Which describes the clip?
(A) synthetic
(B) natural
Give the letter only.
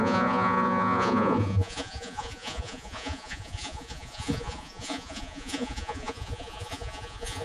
A